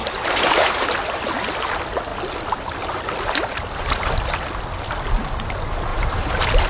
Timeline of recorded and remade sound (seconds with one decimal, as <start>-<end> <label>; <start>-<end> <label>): 0.0-0.7 remade; 0.7-5.9 recorded; 5.9-6.7 remade